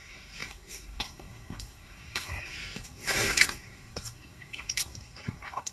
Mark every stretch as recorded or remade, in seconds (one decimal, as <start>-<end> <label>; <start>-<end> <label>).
0.0-5.7 remade